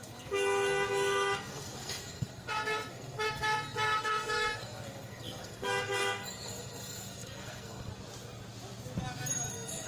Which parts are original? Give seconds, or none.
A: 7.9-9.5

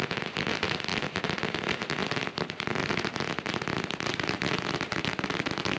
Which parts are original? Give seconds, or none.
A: 0.0-5.8

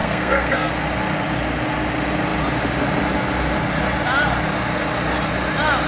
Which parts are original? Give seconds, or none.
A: 0.7-5.9

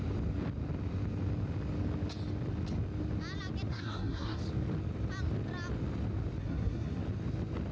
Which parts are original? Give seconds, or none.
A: 0.0-3.7; 4.4-6.4; 7.0-7.7

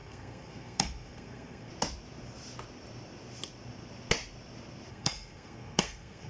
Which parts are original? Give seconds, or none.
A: 1.7-4.9

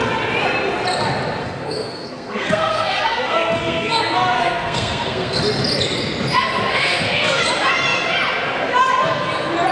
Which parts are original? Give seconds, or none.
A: 0.0-1.4; 5.4-6.7; 7.4-9.7

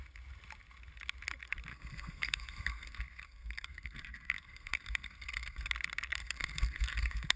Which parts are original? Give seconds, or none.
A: 0.0-1.7; 5.7-6.2